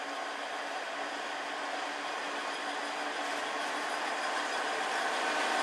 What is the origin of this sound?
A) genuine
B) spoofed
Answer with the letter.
A